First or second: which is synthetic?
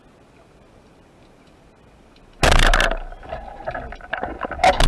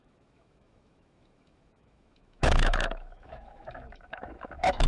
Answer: second